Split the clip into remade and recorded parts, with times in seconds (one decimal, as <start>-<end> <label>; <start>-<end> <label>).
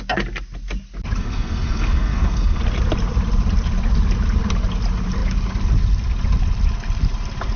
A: 0.0-1.2 recorded; 1.2-2.6 remade; 2.6-7.6 recorded